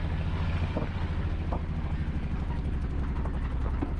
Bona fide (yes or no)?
yes